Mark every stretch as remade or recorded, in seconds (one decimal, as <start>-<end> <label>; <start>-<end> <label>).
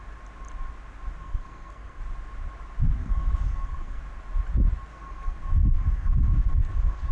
0.0-1.2 recorded; 1.2-2.0 remade; 2.0-3.0 recorded; 3.0-4.0 remade; 4.0-4.9 recorded; 4.9-7.1 remade